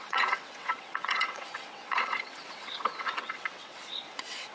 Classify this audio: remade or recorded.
remade